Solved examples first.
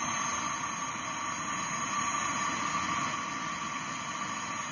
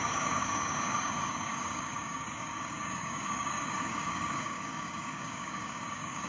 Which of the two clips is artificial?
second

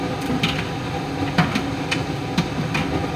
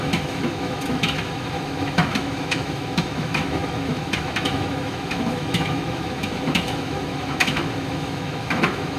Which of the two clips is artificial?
second